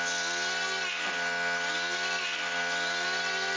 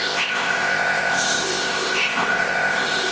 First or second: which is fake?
second